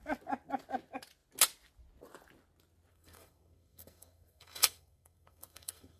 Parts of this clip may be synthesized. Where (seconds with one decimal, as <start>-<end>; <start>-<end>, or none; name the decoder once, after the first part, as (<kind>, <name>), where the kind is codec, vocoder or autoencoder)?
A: 2.9-6.0 (codec, SNAC)